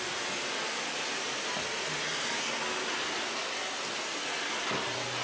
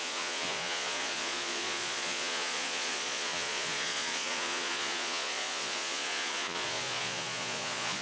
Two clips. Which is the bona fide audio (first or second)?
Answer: first